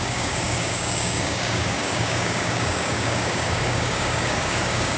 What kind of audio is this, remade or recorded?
remade